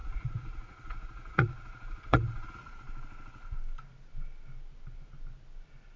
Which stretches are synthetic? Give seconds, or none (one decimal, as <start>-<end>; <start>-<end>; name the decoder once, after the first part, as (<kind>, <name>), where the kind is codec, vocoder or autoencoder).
0.0-2.6 (vocoder, Vocos)